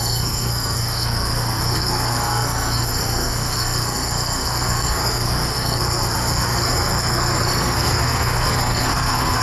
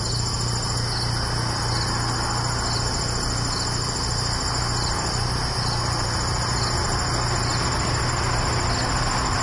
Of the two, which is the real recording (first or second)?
second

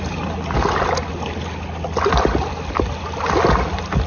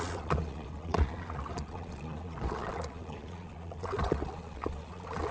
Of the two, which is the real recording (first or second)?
first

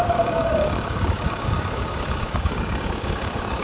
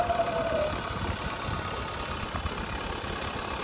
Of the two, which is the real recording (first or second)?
second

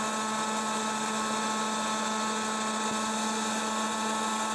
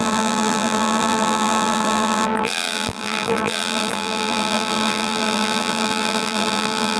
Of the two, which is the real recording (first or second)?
first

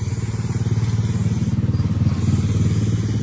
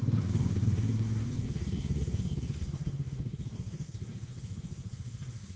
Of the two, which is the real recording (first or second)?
first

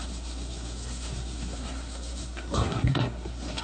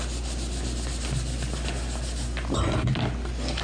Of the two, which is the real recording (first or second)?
second